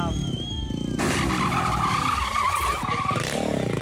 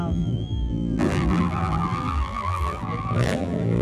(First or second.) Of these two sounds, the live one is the first